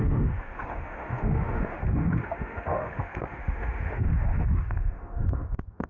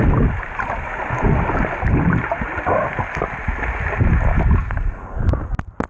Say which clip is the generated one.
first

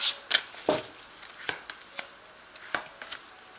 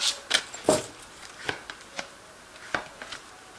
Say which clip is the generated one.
second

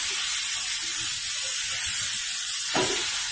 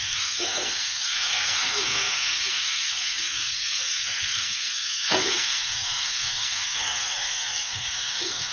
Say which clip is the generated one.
second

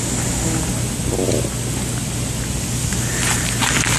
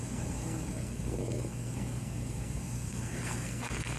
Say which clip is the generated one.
second